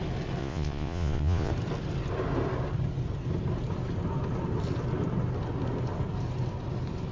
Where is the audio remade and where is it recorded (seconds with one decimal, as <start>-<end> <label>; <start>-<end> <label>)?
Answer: 0.0-0.4 recorded; 0.4-1.5 remade; 1.5-7.1 recorded